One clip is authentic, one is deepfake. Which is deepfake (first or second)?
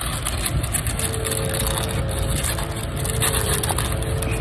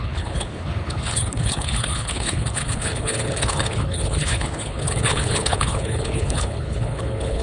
second